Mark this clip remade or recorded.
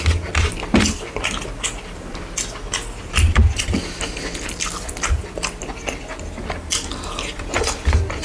recorded